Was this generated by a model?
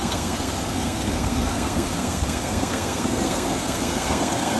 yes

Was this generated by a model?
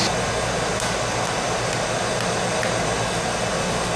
no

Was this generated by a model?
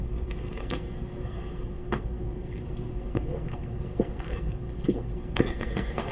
yes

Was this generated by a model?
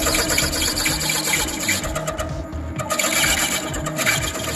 no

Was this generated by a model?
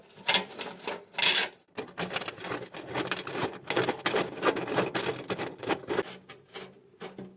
no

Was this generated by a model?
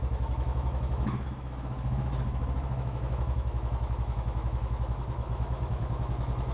yes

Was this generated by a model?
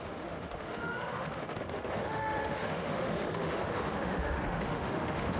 yes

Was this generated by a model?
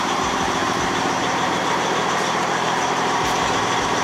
yes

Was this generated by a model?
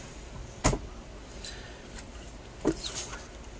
no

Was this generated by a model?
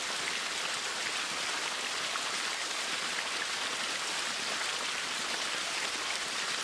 no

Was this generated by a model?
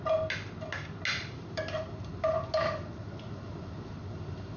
no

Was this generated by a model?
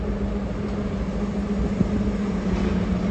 no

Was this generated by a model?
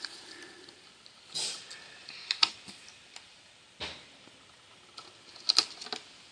no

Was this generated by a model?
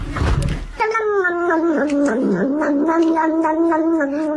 no